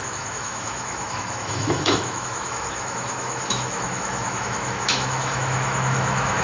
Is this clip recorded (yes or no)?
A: no